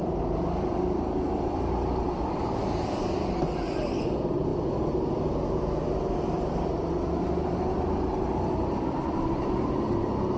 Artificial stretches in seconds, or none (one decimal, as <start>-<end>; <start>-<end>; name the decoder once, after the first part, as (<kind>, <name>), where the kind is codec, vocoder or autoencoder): 0.0-2.4 (vocoder, BigVGAN v2)